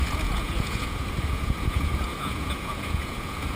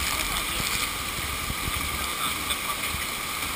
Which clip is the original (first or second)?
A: second